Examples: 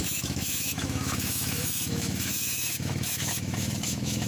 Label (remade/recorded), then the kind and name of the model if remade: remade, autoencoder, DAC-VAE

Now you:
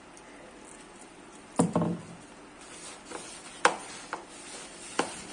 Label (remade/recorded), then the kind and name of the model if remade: recorded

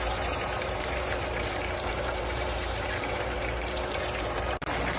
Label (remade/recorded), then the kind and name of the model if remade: remade, vocoder, BigVGAN v2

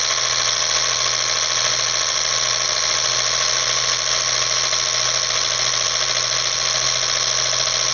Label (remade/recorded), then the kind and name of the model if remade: recorded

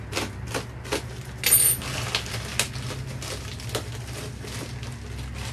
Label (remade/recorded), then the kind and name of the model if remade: recorded